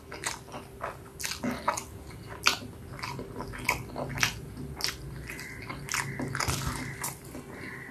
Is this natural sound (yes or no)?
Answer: yes